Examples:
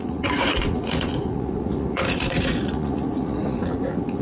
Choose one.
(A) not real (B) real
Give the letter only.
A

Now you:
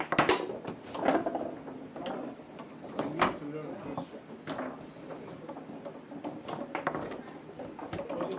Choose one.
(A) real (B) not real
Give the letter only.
A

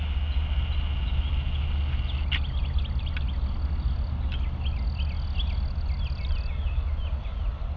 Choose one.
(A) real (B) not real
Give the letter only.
A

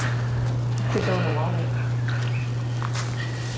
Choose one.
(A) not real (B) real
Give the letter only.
B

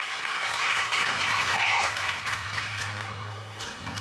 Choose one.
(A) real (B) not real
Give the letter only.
B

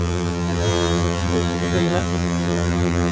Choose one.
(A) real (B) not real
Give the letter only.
B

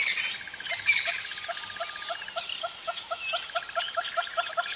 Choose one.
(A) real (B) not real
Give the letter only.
A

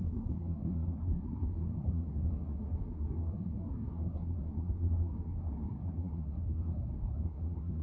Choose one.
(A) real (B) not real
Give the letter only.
B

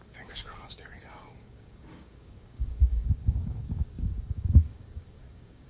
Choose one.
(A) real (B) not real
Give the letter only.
B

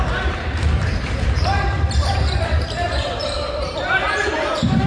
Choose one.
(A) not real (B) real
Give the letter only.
A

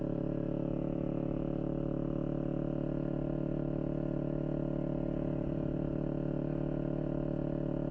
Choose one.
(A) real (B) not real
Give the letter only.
A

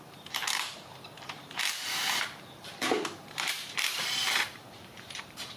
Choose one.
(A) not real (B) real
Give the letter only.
A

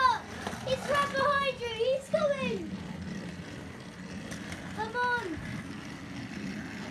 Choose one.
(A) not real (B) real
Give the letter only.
B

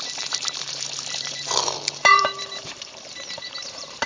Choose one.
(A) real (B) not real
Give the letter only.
B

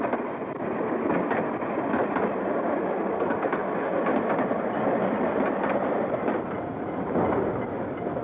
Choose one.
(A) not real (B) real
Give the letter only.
B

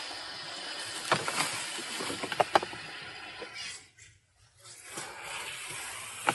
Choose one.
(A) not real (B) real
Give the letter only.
B